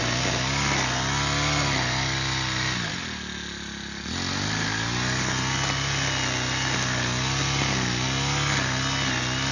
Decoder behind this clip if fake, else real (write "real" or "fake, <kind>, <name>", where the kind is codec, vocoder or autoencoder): real